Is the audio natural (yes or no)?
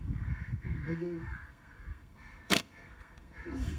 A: no